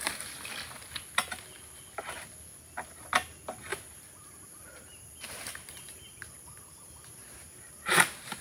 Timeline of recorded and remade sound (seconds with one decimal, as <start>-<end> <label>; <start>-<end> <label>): 0.0-3.7 recorded; 3.7-8.4 remade